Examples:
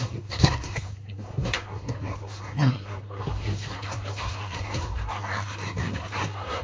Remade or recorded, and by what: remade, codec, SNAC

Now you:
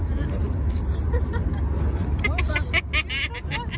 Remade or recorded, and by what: recorded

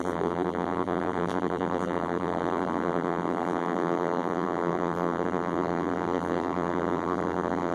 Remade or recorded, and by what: remade, vocoder, BigVGAN v2